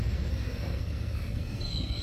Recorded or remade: remade